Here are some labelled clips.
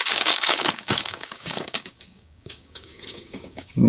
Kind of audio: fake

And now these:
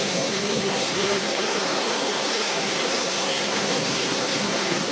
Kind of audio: fake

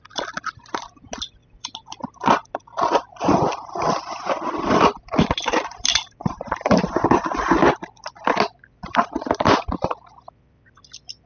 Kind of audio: real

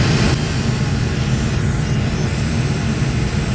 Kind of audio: real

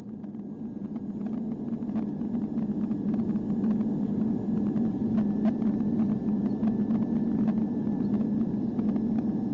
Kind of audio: real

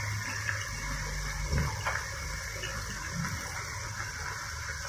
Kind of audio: real